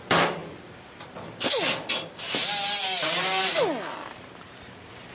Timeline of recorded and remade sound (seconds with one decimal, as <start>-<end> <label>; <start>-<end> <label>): 0.0-5.1 recorded